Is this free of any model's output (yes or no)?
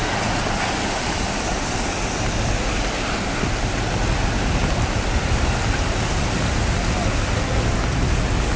yes